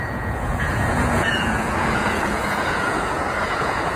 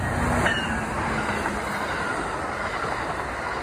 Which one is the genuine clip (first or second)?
second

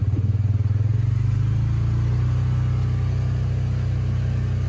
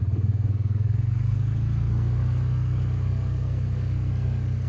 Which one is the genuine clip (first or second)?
first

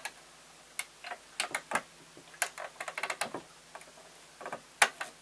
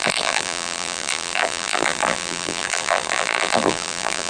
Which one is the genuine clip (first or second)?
first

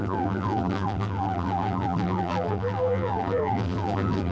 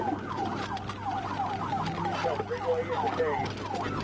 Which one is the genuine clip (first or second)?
second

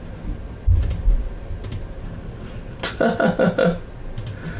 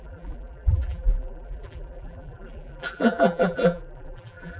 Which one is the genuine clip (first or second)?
first